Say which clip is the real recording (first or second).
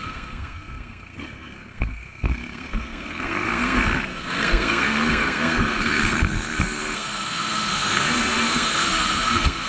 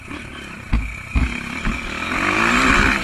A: second